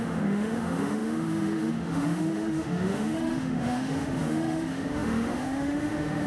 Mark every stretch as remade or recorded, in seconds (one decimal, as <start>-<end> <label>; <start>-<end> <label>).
0.0-6.3 remade